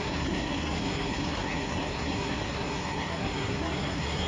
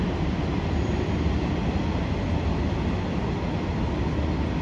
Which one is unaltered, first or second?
second